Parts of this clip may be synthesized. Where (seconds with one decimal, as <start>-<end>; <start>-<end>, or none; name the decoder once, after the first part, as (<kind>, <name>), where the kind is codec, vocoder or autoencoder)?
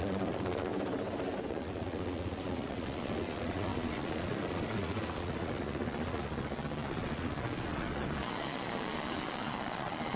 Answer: 0.0-0.7 (vocoder, Vocos); 1.5-10.2